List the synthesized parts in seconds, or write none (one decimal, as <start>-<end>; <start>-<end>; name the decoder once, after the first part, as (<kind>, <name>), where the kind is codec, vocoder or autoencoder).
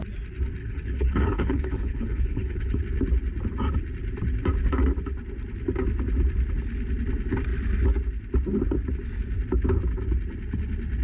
0.6-2.8 (codec, HILCodec)